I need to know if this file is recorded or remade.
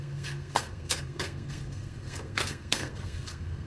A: remade